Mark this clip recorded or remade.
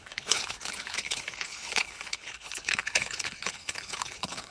remade